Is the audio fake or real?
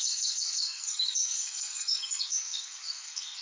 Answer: fake